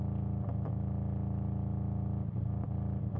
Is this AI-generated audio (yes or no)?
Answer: no